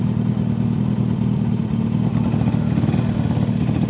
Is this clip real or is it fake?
real